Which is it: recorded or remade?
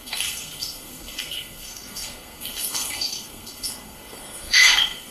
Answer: remade